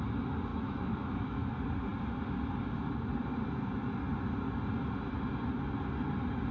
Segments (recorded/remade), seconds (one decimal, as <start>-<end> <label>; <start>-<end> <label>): 0.0-0.5 recorded; 0.5-1.5 remade; 1.5-6.5 recorded